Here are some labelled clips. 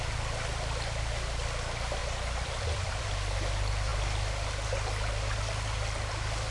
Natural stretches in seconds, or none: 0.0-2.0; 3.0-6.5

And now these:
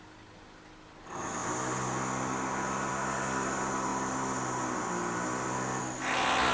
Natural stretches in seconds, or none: 0.0-6.5

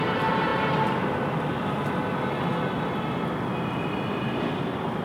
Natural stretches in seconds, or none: 0.0-5.0

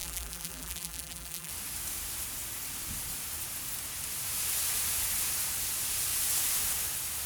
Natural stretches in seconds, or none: 1.5-7.3

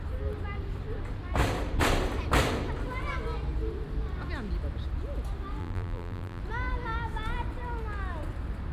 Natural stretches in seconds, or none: 0.0-5.6; 6.4-8.7

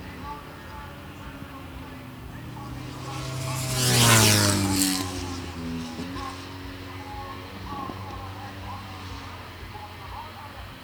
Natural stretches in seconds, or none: 0.0-8.0; 9.6-10.8

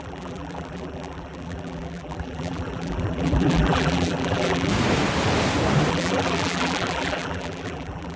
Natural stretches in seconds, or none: 4.7-5.9

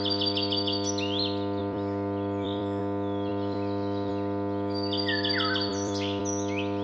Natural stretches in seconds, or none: 0.0-1.6; 2.8-3.3; 4.1-5.7; 6.2-6.8